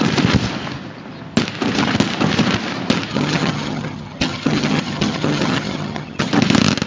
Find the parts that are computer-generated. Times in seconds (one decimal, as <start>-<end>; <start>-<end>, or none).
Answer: 3.1-6.3